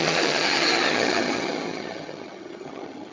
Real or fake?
fake